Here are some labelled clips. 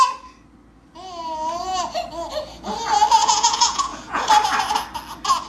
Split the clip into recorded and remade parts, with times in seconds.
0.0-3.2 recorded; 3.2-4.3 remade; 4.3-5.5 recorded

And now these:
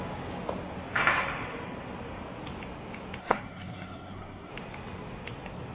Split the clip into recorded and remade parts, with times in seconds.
0.0-3.2 recorded; 3.2-4.5 remade; 4.5-5.7 recorded

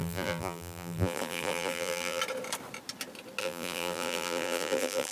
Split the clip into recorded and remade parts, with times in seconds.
0.0-2.2 remade; 2.2-3.4 recorded; 3.4-5.1 remade

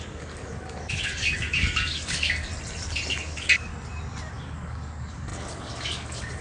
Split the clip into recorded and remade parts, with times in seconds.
0.0-2.5 remade; 2.5-3.1 recorded; 3.1-3.7 remade; 3.7-4.3 recorded; 4.3-6.4 remade

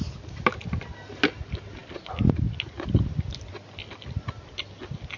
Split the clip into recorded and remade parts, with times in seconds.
0.0-5.2 recorded

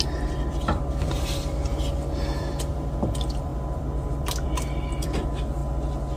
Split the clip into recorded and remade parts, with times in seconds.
0.0-1.7 remade; 1.7-2.4 recorded; 2.4-5.6 remade; 5.6-6.2 recorded

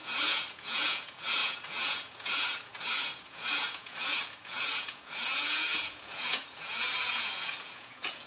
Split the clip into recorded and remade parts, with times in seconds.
0.0-8.3 remade

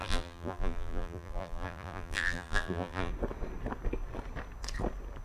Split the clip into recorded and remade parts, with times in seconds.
0.0-3.1 remade; 3.1-5.2 recorded